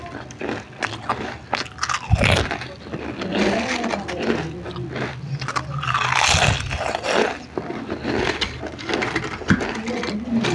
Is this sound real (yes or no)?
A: yes